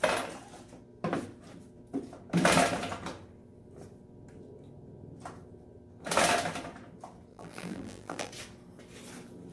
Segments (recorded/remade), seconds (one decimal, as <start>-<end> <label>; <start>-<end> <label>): 0.0-7.3 recorded; 7.3-8.3 remade; 8.3-9.5 recorded